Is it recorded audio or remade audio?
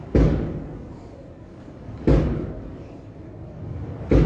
remade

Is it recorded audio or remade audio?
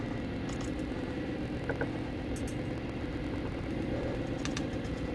recorded